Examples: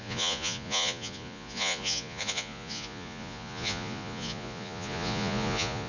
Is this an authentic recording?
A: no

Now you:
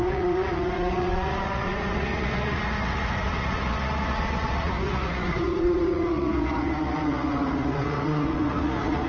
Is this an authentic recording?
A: no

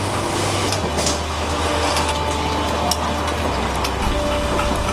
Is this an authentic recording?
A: yes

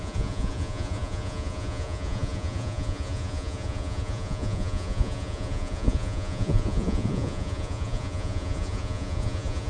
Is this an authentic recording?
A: no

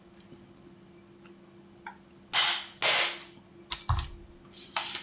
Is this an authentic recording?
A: yes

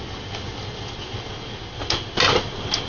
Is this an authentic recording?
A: yes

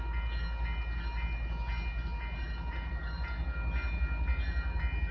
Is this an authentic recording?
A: yes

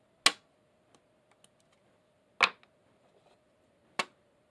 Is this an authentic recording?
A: yes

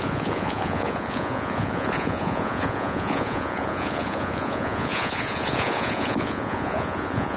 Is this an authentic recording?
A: no